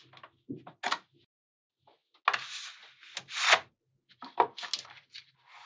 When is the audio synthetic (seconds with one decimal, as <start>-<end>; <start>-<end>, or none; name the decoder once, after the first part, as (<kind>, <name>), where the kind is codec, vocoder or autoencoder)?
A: none